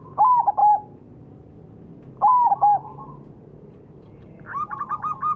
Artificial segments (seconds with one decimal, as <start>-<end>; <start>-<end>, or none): none